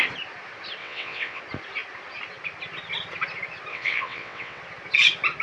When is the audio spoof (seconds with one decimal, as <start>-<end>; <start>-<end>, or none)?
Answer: 0.8-1.4; 3.7-4.6